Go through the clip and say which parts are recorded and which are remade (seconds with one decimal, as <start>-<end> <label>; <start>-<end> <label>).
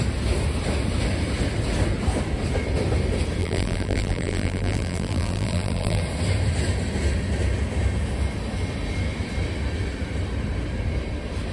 0.0-3.4 recorded; 3.4-6.0 remade; 6.0-11.5 recorded